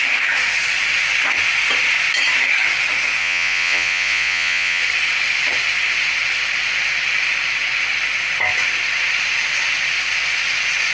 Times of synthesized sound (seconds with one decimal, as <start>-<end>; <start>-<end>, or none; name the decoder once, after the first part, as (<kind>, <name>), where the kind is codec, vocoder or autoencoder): 3.2-4.8 (vocoder, Vocos)